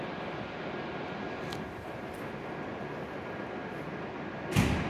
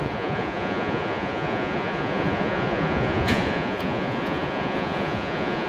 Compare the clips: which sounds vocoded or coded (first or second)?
second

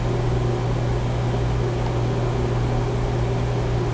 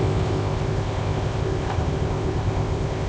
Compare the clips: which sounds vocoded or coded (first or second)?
second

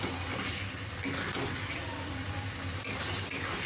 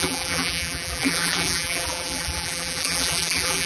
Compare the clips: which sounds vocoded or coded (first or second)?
second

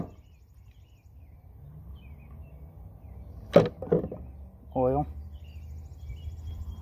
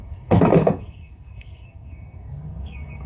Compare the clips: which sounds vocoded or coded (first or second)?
second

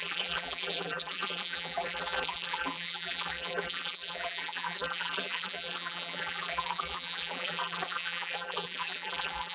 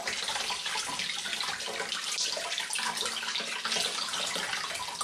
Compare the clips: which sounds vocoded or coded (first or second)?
first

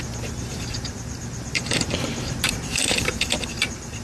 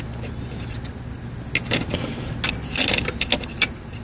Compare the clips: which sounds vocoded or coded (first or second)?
first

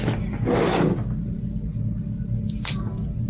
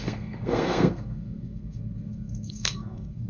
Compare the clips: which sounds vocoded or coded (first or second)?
second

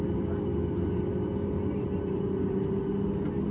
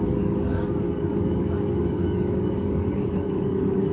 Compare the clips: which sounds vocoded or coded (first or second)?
second